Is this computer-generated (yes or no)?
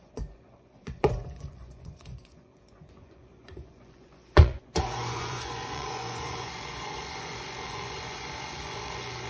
yes